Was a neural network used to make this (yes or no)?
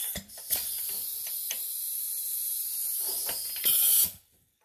no